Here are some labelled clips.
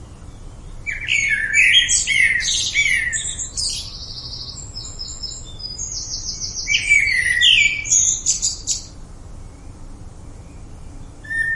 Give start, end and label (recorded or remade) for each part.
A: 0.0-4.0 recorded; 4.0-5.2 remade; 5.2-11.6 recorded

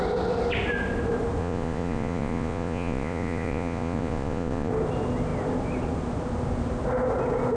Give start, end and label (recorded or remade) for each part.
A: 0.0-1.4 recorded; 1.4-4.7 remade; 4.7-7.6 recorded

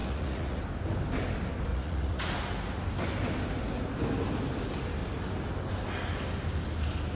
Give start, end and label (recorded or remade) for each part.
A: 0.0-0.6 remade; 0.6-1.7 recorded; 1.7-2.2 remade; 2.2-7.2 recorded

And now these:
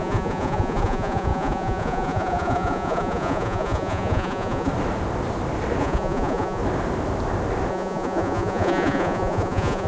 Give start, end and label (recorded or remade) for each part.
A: 0.0-4.7 remade; 4.7-5.8 recorded; 5.8-6.6 remade; 6.6-7.7 recorded; 7.7-9.9 remade